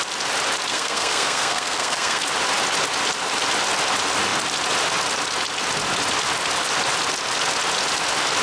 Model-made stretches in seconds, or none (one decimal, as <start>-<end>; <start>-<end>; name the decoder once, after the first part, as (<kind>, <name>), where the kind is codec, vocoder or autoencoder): 0.7-2.2 (codec, SNAC)